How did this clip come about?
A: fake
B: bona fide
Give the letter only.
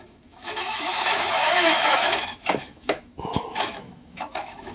A